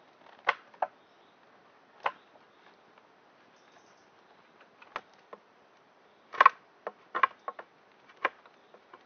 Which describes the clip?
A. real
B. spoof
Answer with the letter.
A